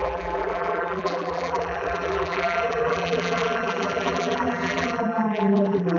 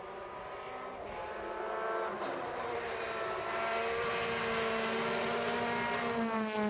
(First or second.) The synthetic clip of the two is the first